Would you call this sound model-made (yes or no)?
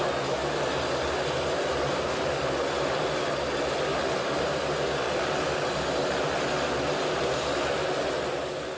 no